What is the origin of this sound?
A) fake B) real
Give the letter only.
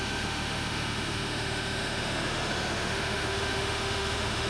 A